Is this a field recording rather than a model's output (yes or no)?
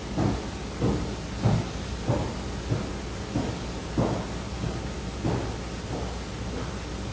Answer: yes